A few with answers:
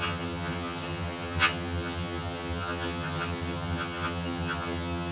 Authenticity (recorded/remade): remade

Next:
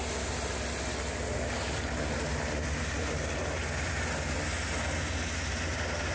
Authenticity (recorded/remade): recorded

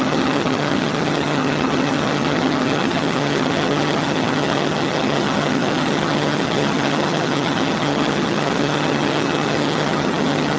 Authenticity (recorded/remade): remade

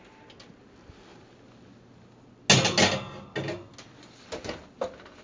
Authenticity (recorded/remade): recorded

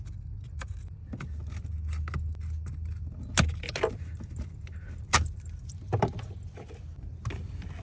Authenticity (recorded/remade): recorded